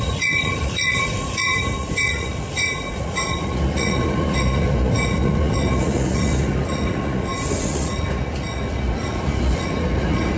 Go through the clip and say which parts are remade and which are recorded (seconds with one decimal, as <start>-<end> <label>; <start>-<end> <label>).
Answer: 0.0-10.4 remade

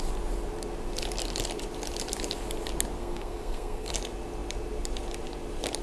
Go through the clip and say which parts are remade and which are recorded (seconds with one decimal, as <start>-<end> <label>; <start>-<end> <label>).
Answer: 0.0-3.0 recorded; 3.0-3.9 remade; 3.9-5.8 recorded

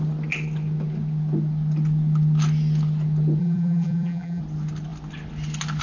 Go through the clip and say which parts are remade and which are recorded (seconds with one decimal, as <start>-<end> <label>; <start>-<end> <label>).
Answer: 0.0-3.4 recorded; 3.4-4.4 remade; 4.4-5.8 recorded

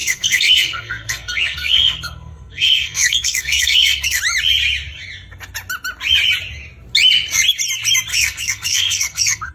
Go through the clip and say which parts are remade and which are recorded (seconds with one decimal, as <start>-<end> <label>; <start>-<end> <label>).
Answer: 0.0-4.2 remade; 4.2-8.1 recorded; 8.1-9.5 remade

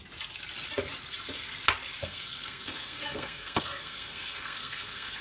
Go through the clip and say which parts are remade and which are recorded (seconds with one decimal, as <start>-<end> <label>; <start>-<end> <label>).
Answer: 0.0-2.0 recorded; 2.0-5.2 remade